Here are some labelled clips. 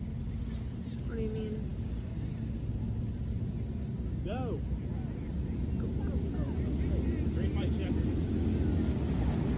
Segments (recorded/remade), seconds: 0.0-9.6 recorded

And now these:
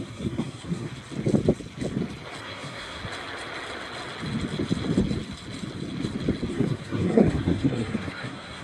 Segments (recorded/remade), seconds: 0.0-0.9 remade; 0.9-2.4 recorded; 2.4-3.0 remade; 3.0-6.5 recorded; 6.5-8.6 remade

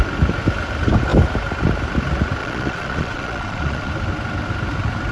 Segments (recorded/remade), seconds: 0.0-2.4 recorded; 2.4-3.9 remade; 3.9-5.1 recorded

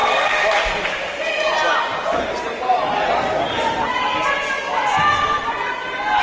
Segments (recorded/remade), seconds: 0.0-6.2 recorded

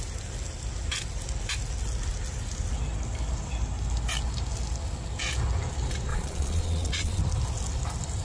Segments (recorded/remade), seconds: 0.0-6.1 recorded; 6.1-7.2 remade; 7.2-8.2 recorded

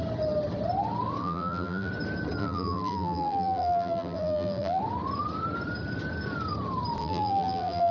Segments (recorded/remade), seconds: 0.0-1.2 recorded; 1.2-1.9 remade; 1.9-2.4 recorded; 2.4-4.8 remade; 4.8-7.0 recorded; 7.0-7.9 remade

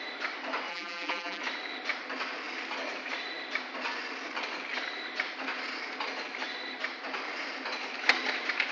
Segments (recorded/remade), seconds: 0.0-0.7 recorded; 0.7-1.4 remade; 1.4-8.7 recorded

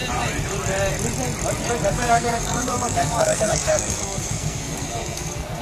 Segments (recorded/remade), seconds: 0.0-1.9 recorded; 1.9-5.6 remade